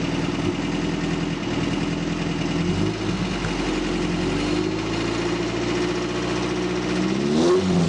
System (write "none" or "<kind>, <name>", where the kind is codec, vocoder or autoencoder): none